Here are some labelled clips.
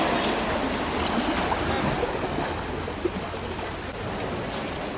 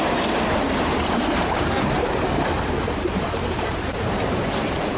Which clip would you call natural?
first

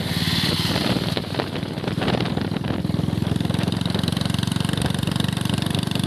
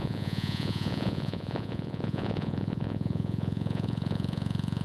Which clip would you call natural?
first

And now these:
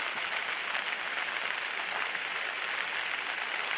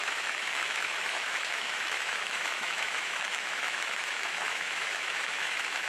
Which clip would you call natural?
first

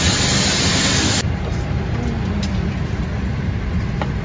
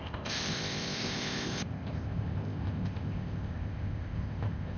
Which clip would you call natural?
first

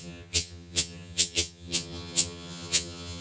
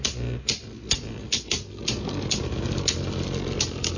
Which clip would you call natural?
second